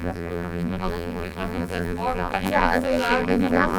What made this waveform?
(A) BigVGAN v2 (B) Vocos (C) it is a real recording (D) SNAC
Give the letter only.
A